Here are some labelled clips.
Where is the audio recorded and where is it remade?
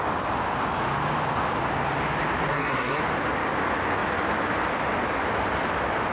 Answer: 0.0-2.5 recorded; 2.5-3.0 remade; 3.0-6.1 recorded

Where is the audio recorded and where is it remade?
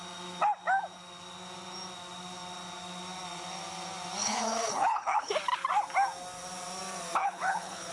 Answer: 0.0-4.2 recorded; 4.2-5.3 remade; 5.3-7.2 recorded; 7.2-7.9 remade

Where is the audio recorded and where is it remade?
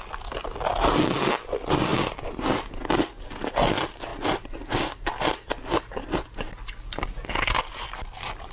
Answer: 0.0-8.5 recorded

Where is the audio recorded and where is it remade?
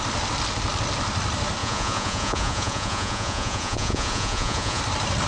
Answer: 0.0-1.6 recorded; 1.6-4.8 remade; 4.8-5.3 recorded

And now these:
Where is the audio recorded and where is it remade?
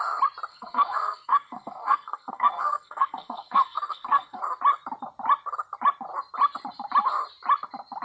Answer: 0.0-0.5 recorded; 0.5-4.4 remade; 4.4-8.0 recorded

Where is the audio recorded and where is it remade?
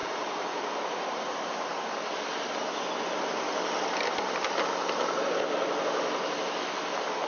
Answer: 0.0-7.3 recorded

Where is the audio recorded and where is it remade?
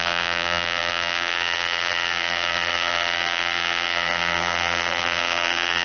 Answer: 0.0-5.8 remade